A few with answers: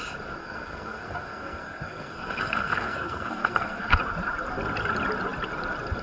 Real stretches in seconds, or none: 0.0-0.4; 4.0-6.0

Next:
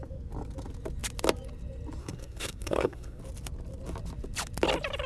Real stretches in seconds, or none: 0.0-2.0; 3.2-5.1

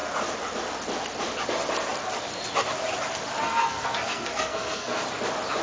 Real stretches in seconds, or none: 0.0-3.4; 5.0-5.6

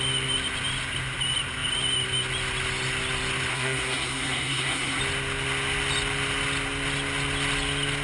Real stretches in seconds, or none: 0.0-3.5; 5.0-8.0

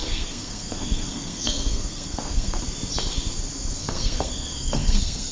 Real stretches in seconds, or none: 2.6-3.8